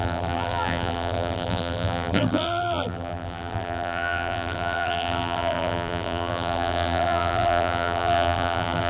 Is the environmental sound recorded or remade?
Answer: remade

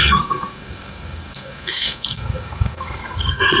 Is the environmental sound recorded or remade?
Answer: remade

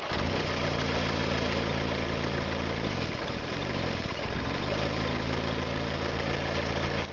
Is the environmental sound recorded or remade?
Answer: recorded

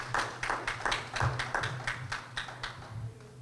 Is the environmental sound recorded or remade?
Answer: recorded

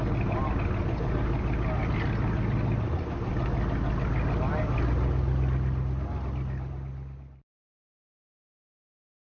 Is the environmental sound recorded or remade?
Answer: recorded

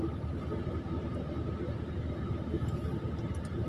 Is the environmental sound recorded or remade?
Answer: recorded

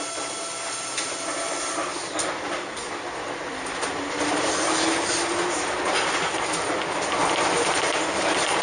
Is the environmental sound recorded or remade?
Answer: recorded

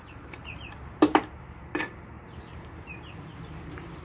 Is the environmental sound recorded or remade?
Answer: remade